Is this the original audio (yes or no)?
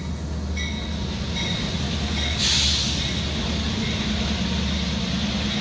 yes